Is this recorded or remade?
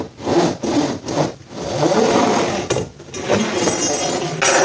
recorded